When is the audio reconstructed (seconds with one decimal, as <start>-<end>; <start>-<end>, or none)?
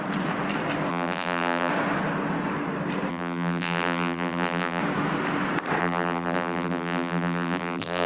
0.9-1.7; 3.1-4.8; 5.8-8.1